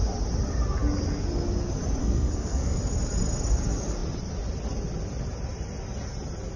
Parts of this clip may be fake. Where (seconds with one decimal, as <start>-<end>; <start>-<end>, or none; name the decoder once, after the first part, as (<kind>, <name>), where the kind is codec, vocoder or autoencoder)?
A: 2.0-2.8 (codec, SNAC)